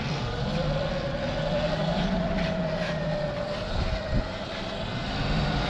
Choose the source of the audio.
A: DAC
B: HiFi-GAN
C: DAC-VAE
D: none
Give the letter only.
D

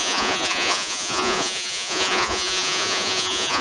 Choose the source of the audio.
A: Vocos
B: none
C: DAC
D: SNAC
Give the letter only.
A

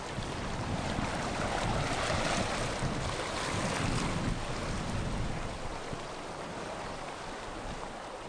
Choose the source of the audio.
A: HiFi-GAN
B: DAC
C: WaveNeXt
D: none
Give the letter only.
D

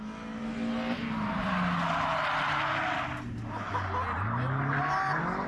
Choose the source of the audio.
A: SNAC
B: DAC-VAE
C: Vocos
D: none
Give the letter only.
D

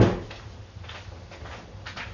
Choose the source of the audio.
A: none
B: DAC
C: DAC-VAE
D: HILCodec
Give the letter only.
A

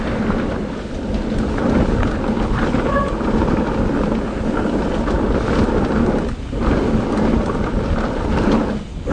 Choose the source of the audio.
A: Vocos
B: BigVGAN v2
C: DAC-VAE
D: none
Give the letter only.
D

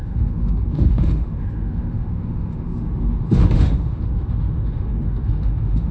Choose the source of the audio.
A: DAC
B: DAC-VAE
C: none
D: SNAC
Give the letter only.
B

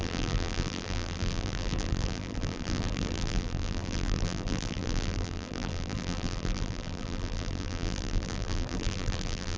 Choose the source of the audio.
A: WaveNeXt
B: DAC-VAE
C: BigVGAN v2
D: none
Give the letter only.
C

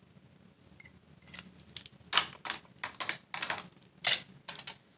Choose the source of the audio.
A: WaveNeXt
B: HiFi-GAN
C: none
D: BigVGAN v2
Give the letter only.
C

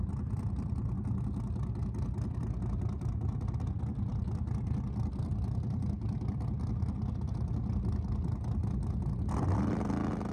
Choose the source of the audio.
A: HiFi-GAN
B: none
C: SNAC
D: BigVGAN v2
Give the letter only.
B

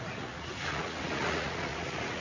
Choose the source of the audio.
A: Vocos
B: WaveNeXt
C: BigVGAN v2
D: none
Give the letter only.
A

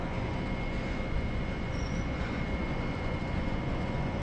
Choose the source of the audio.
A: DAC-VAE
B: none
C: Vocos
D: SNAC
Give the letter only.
C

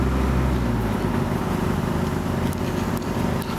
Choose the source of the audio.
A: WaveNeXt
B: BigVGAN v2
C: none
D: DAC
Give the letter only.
C